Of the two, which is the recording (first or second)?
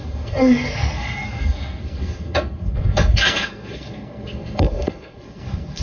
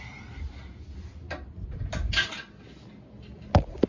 second